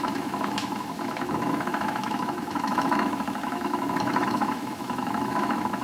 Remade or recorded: remade